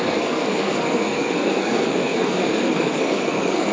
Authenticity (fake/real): fake